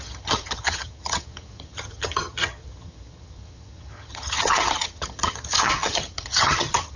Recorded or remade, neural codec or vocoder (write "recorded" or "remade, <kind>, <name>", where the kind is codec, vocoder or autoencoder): remade, vocoder, HiFi-GAN